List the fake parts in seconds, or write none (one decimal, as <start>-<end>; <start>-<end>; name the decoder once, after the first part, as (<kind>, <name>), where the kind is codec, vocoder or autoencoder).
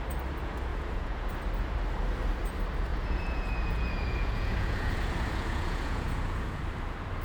0.7-1.3 (vocoder, Vocos); 2.9-6.6